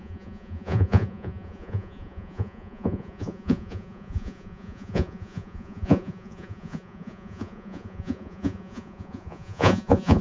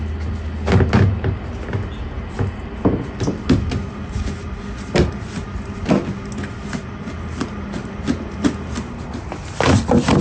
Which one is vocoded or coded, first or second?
first